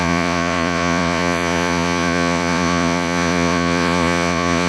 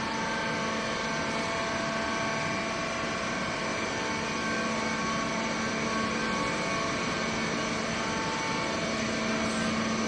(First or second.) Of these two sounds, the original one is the second